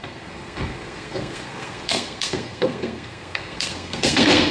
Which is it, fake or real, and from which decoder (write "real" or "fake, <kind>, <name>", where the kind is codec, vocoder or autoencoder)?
fake, codec, SNAC